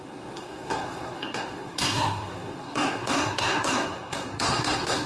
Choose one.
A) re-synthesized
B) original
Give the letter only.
A